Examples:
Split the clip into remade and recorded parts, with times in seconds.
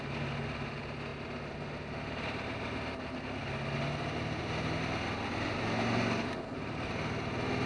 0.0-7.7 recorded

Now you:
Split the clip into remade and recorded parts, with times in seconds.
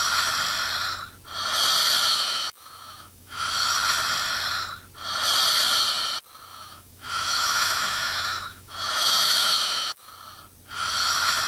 0.0-2.1 recorded; 2.1-3.4 remade; 3.4-6.5 recorded; 6.5-10.1 remade; 10.1-11.5 recorded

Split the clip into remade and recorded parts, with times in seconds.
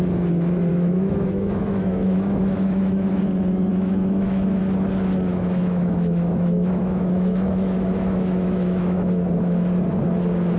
0.0-0.7 recorded; 0.7-3.2 remade; 3.2-3.7 recorded; 3.7-4.6 remade; 4.6-5.3 recorded; 5.3-9.1 remade; 9.1-10.6 recorded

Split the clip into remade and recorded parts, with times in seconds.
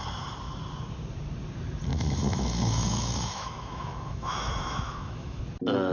0.0-1.9 recorded; 1.9-5.4 remade; 5.4-5.9 recorded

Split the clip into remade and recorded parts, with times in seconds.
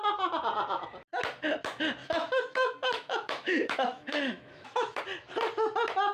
0.0-2.0 recorded; 2.0-5.0 remade; 5.0-6.1 recorded